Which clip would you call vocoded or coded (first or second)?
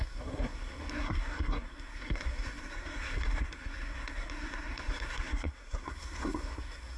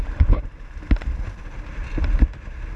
first